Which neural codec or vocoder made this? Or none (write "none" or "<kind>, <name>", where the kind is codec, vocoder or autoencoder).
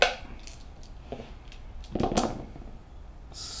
none